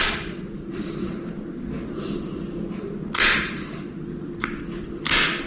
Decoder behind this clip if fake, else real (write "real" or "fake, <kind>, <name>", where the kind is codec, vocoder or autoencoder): real